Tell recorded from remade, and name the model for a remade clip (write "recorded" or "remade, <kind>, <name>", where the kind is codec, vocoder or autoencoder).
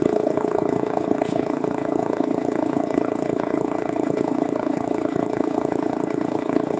remade, codec, HILCodec